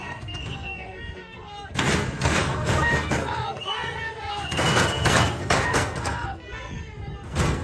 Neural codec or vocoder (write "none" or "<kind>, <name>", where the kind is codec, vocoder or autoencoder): codec, SNAC